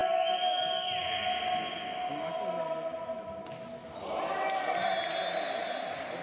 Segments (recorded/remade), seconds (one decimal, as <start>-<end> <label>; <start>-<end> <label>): 0.0-6.2 recorded